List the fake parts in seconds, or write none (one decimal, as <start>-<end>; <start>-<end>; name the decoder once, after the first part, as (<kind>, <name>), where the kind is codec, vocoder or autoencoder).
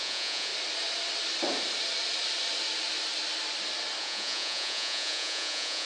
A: 0.0-0.5 (vocoder, Vocos); 4.0-5.9